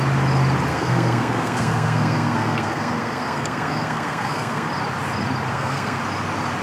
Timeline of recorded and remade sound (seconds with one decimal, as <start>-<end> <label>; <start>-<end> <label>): 0.0-0.7 recorded; 0.7-4.7 remade; 4.7-5.5 recorded; 5.5-6.0 remade; 6.0-6.6 recorded